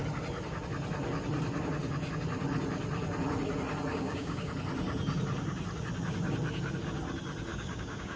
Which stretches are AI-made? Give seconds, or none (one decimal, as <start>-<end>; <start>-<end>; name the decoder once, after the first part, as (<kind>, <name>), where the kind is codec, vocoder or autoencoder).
3.9-4.5 (codec, DAC); 7.5-8.2